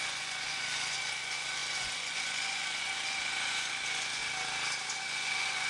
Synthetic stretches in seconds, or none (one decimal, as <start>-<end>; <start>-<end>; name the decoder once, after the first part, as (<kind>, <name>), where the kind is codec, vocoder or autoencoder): 0.0-4.2 (vocoder, Vocos); 5.0-5.7